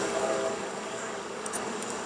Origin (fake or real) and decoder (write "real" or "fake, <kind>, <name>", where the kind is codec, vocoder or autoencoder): fake, codec, DAC